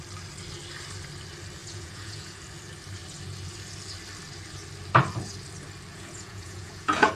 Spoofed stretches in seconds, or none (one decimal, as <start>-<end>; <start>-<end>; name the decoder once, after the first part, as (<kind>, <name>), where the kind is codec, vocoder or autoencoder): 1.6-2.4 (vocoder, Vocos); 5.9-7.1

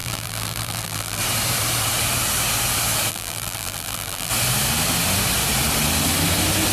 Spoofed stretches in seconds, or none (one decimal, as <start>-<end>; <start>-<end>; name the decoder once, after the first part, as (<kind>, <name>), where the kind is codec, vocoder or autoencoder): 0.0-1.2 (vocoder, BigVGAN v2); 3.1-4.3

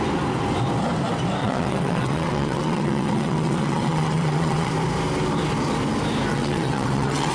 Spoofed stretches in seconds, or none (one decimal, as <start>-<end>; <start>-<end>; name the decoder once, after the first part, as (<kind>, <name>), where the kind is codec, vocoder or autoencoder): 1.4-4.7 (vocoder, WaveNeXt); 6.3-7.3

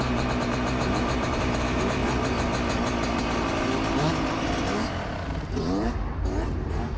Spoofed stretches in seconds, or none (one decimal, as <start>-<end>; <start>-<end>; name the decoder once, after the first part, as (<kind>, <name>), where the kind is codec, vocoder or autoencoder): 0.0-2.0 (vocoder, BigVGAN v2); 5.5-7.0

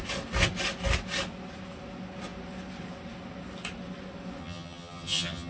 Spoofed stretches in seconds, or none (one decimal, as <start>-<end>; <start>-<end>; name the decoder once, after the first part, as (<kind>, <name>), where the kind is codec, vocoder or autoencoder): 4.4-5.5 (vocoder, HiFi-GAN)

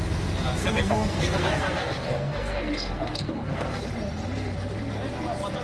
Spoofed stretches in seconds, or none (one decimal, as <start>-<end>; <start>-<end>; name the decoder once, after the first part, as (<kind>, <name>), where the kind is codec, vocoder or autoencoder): 0.6-3.8 (codec, SNAC)

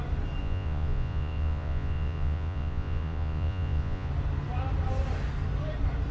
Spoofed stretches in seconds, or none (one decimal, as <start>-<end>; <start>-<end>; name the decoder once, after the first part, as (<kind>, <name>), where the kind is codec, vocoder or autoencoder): 0.4-4.1 (vocoder, Vocos)